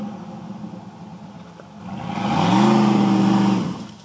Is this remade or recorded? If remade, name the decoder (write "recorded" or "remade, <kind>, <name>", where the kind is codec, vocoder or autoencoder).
recorded